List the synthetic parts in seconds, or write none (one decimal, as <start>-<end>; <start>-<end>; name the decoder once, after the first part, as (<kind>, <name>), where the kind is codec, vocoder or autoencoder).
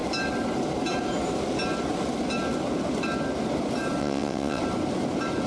4.0-4.6 (vocoder, WaveNeXt)